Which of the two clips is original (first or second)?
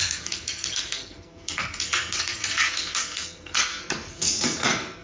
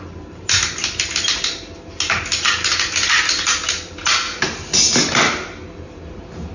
second